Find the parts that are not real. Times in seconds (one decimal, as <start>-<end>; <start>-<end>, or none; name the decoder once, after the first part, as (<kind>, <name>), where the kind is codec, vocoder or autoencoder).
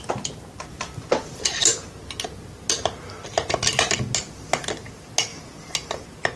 none